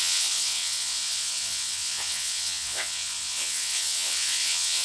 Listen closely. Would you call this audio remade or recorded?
remade